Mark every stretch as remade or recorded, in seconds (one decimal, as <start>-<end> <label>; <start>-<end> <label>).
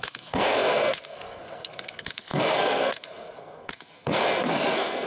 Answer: 0.0-5.1 remade